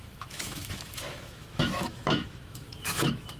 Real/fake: fake